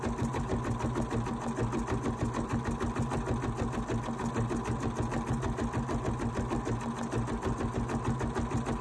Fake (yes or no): no